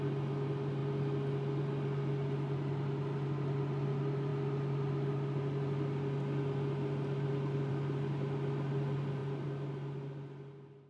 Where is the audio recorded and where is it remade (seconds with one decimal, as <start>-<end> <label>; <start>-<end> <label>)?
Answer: 0.0-10.9 recorded